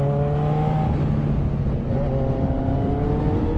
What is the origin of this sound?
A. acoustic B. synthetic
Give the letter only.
A